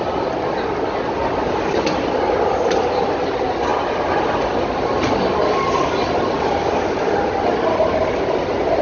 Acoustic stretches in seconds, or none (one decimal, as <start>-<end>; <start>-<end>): 0.0-8.8